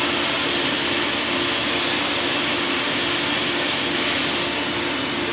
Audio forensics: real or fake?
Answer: real